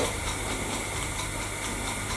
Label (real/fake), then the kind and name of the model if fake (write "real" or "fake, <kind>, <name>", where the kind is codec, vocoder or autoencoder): real